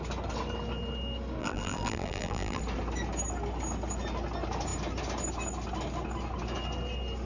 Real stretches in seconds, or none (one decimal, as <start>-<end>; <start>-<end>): 0.0-1.4; 2.6-7.3